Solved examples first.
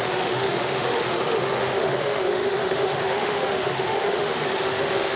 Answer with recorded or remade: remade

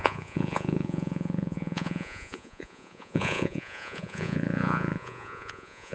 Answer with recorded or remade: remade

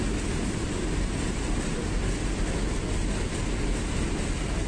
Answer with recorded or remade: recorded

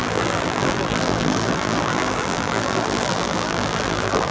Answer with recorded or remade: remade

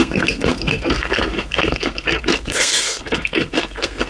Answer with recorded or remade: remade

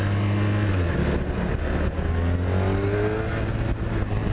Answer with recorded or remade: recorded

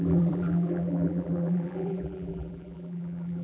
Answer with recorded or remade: remade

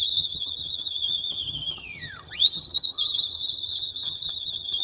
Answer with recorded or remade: remade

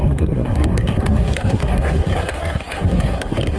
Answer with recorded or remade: remade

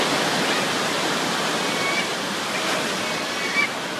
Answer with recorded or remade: recorded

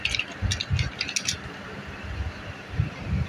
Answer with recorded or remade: recorded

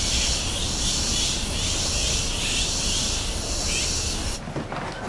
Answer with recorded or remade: recorded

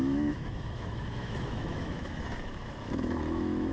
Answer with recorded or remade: remade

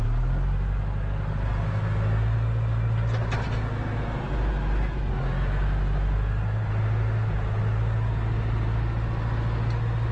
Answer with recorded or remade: recorded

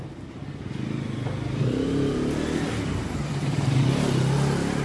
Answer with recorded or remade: recorded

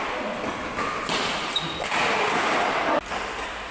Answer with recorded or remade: recorded